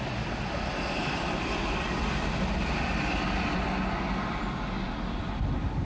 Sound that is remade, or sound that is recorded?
recorded